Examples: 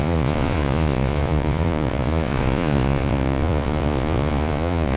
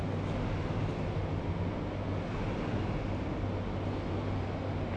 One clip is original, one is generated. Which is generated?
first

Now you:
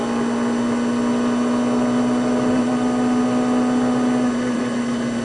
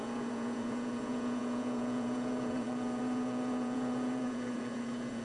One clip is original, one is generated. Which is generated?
second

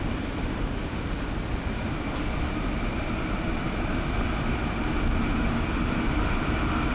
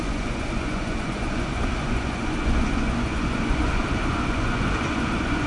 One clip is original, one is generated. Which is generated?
second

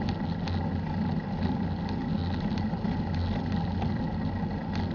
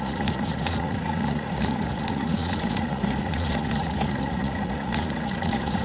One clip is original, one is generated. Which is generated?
second